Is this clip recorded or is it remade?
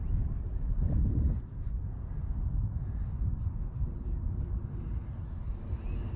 recorded